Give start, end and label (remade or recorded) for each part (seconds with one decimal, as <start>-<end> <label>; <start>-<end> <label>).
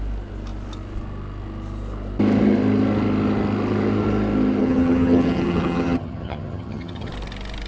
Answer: 0.0-4.6 recorded; 4.6-7.1 remade; 7.1-7.7 recorded